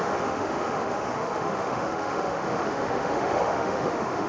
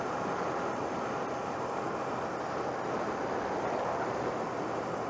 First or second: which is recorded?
second